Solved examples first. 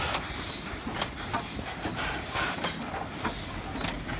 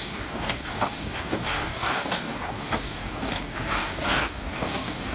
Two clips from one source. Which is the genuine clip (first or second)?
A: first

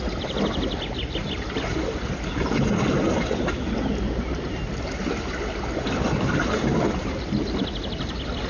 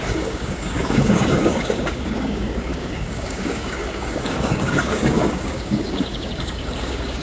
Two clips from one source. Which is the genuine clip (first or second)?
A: first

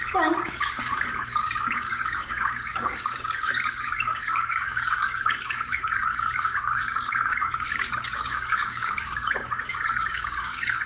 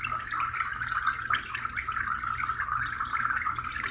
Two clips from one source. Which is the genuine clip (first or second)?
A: second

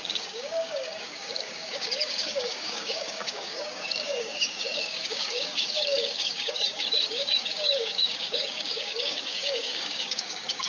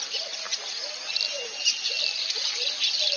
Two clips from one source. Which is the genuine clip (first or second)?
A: second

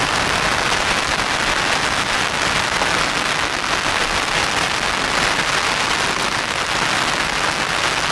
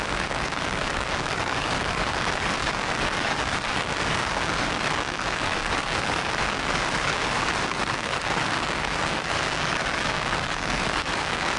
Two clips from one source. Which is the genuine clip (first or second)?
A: first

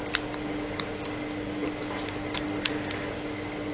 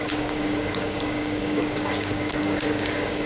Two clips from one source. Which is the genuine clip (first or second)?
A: first